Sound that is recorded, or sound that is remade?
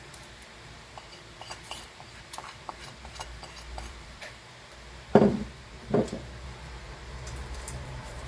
remade